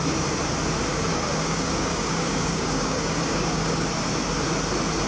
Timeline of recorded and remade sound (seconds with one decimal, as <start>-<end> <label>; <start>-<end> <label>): 0.0-0.9 recorded; 0.9-3.9 remade; 3.9-5.1 recorded